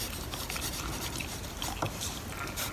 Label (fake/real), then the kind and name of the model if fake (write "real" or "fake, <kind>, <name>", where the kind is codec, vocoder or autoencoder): real